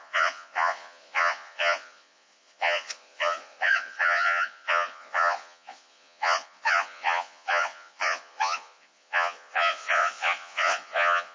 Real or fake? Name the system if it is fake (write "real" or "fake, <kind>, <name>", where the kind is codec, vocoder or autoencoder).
fake, vocoder, Vocos